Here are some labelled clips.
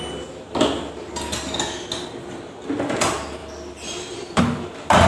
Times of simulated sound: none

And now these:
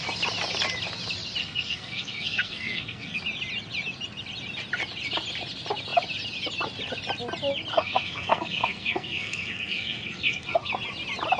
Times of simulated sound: 1.4-3.2 (codec, SNAC); 7.7-10.7

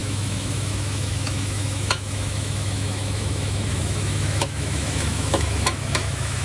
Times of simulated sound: 0.0-6.4 (autoencoder, DAC-VAE)

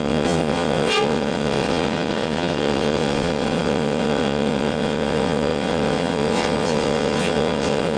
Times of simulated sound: 0.0-8.0 (vocoder, WaveNeXt)

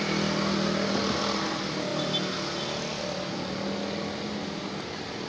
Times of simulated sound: none